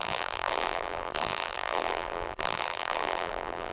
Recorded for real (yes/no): no